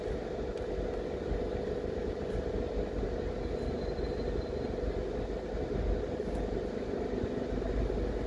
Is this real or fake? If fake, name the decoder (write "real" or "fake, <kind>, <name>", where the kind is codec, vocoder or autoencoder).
real